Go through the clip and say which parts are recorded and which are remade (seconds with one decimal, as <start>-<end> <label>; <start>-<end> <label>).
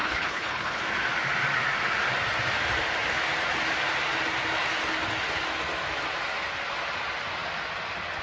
0.0-0.8 remade; 0.8-8.2 recorded